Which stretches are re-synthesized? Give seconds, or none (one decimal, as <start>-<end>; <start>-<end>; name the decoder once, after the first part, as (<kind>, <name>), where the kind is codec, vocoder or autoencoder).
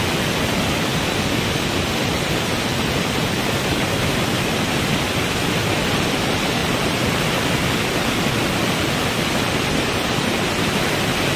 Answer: none